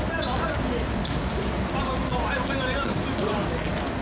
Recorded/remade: recorded